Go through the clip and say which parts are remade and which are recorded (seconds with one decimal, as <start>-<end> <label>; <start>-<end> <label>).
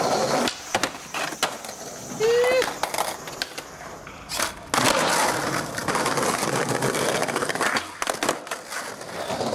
0.0-9.5 recorded